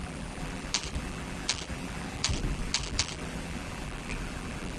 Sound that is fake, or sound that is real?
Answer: fake